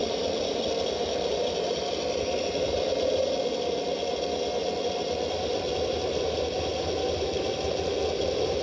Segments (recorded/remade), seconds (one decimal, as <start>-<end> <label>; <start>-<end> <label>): 0.0-8.6 recorded